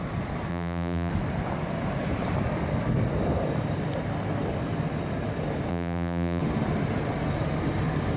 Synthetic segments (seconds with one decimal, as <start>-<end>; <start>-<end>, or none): 0.5-1.1; 5.7-6.4